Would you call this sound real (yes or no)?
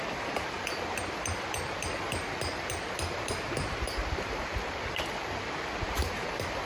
yes